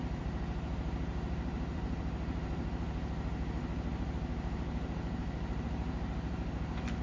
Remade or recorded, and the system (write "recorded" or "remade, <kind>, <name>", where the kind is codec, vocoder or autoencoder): remade, vocoder, BigVGAN v2